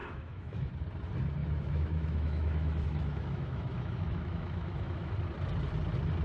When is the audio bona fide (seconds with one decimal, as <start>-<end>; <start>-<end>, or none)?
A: 0.7-1.4; 5.1-6.2